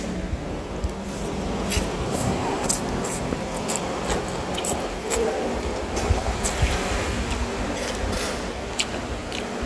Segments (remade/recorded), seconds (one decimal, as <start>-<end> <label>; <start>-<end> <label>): 0.0-2.1 recorded; 2.1-2.7 remade; 2.7-9.7 recorded